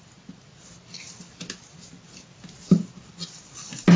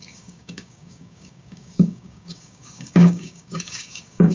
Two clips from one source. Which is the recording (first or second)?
first